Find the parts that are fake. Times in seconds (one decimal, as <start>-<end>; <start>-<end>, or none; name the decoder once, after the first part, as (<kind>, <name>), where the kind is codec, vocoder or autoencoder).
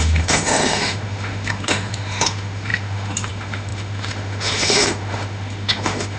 0.0-6.2 (autoencoder, DAC-VAE)